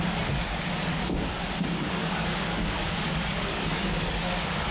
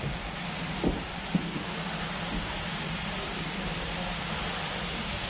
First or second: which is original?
second